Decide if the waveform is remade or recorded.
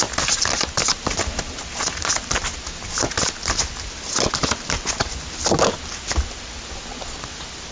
recorded